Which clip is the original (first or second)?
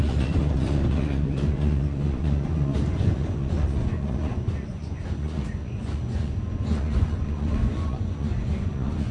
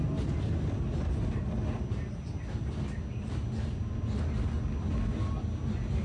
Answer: second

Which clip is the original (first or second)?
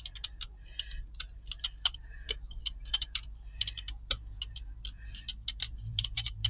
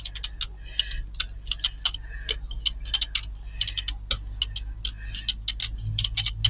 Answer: second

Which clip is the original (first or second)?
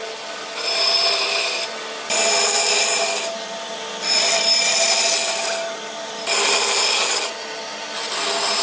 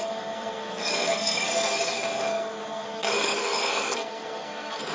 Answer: first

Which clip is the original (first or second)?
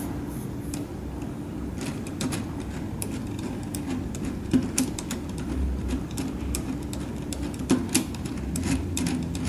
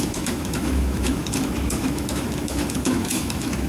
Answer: first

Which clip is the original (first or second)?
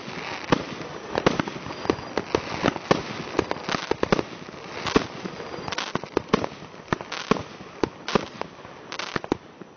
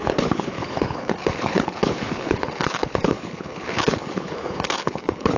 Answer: first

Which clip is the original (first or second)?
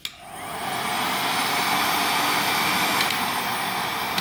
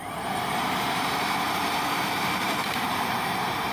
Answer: first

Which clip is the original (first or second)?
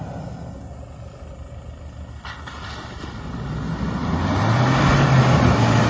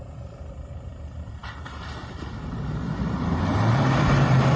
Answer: first